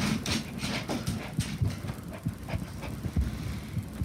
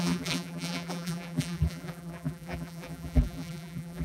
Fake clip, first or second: second